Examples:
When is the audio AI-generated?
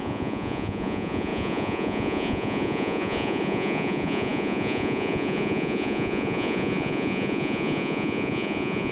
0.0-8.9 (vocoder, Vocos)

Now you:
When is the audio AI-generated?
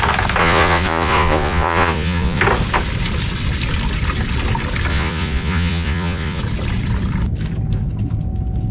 0.4-2.4 (vocoder, Vocos); 4.9-6.4